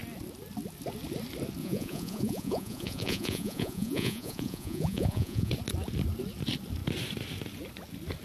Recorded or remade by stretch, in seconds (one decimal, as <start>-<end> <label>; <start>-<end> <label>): 0.0-1.6 recorded; 1.6-5.5 remade; 5.5-8.2 recorded